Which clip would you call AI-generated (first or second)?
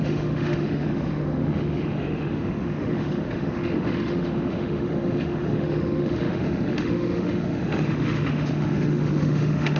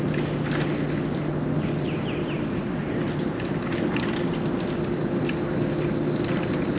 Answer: first